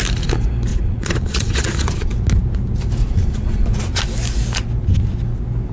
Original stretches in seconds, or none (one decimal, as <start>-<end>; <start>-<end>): 0.0-0.7; 2.1-3.0; 4.0-5.7